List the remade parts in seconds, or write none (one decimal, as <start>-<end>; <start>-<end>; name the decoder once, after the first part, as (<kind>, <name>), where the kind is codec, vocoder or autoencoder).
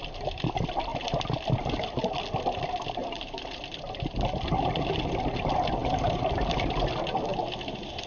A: 3.0-3.6 (vocoder, BigVGAN v2); 5.8-6.3